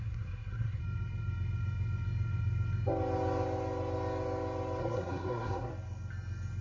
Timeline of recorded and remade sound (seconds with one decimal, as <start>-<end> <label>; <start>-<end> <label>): 0.0-0.8 remade; 0.8-4.8 recorded; 4.8-5.7 remade; 5.7-6.6 recorded